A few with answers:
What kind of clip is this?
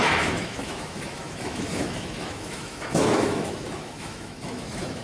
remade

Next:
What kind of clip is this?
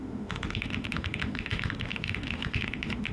remade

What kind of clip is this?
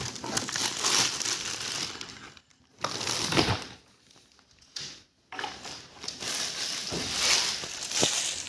recorded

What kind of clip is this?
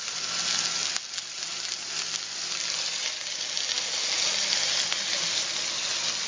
recorded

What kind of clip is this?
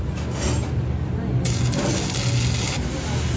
recorded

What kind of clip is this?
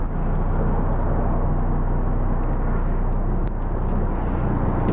recorded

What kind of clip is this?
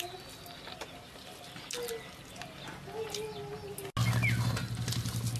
recorded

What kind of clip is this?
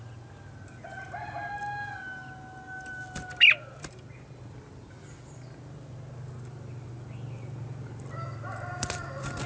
recorded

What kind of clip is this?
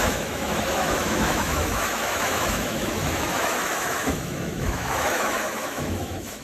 remade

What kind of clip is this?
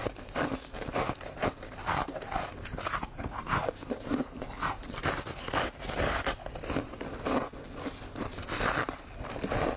recorded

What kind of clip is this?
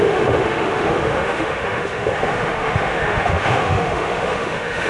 remade